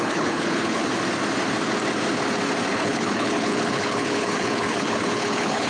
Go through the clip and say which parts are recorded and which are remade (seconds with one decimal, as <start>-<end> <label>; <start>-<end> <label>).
0.0-0.8 remade; 0.8-2.7 recorded; 2.7-5.7 remade